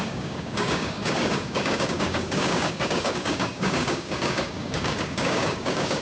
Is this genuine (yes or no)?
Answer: no